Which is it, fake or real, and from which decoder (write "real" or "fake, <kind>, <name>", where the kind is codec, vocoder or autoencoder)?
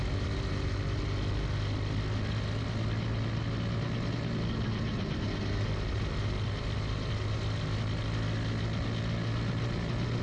real